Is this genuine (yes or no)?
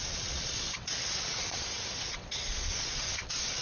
no